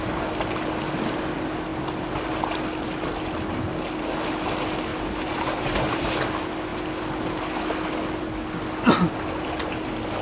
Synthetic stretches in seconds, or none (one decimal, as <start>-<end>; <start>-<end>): 4.9-6.1